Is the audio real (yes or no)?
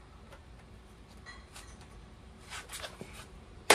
no